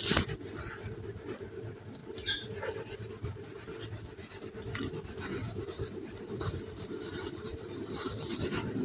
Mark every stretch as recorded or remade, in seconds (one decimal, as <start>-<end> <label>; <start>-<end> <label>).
0.0-2.0 recorded; 2.0-3.4 remade; 3.4-5.3 recorded; 5.3-8.3 remade; 8.3-8.8 recorded